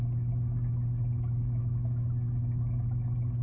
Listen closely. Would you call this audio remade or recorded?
recorded